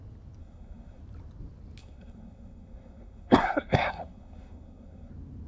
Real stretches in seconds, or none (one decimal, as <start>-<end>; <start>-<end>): 0.0-0.4; 1.0-1.8; 5.1-5.5